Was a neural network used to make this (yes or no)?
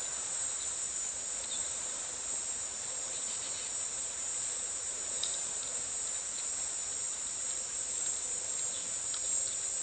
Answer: yes